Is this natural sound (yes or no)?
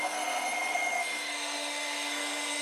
no